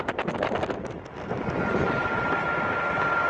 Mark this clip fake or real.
real